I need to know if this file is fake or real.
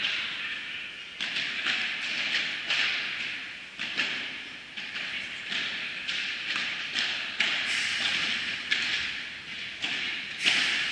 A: real